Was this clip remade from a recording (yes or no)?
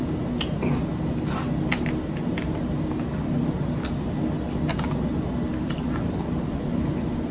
no